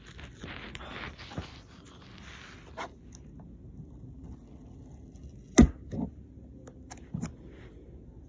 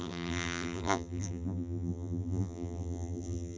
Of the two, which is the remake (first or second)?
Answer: second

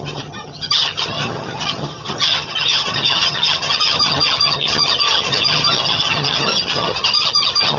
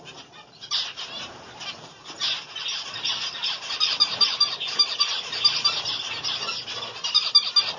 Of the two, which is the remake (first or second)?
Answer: first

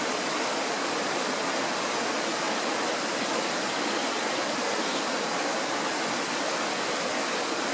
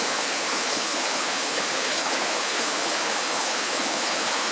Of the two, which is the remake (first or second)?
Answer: second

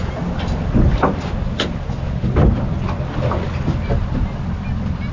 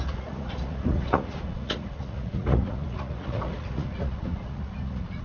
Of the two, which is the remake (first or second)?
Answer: second